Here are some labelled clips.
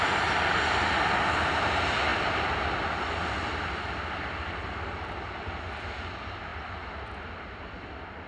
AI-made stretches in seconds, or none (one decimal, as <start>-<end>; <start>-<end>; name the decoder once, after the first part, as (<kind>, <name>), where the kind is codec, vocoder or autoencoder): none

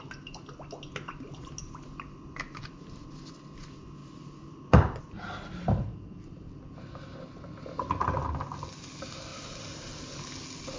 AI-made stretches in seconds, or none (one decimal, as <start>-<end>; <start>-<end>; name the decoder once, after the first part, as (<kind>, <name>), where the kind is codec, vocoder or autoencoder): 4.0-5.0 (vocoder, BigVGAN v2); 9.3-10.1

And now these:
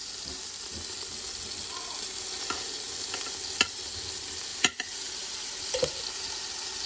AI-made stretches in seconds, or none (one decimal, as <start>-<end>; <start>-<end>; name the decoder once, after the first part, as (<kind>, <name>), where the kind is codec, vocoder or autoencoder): 4.5-5.9 (vocoder, BigVGAN v2)

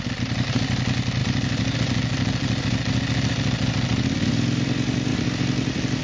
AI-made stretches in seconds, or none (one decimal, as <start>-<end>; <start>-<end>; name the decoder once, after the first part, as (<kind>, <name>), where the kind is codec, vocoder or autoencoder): 1.2-4.3 (vocoder, BigVGAN v2); 5.1-6.0

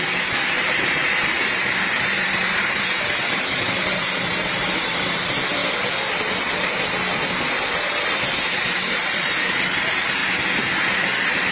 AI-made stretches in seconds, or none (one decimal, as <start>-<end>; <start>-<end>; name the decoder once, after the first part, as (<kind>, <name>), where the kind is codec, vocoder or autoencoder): 0.0-5.6 (vocoder, BigVGAN v2); 8.4-10.2